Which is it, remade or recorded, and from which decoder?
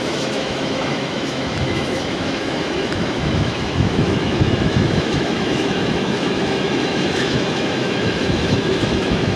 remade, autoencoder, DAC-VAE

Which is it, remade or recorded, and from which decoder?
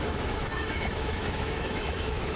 remade, autoencoder, DAC-VAE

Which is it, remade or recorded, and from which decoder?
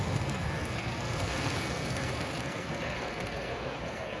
remade, codec, SNAC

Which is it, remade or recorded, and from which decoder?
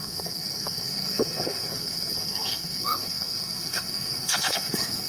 remade, codec, SNAC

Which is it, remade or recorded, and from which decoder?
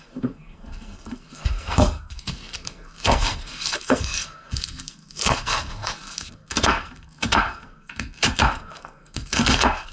remade, codec, SNAC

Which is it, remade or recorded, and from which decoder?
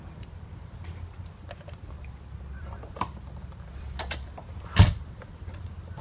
remade, vocoder, BigVGAN v2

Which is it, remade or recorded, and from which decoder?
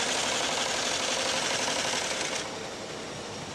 recorded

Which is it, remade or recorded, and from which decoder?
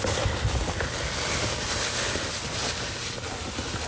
recorded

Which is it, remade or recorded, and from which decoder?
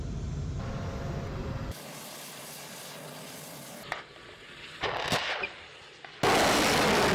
recorded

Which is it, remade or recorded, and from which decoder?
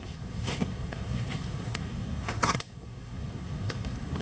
remade, codec, SNAC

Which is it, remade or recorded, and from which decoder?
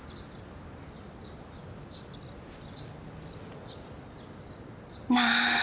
recorded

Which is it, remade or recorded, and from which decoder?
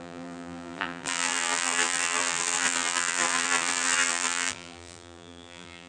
remade, vocoder, BigVGAN v2